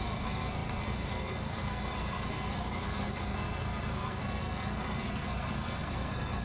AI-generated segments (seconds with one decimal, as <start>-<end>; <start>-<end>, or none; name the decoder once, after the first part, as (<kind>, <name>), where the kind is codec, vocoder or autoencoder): 0.0-6.4 (codec, SNAC)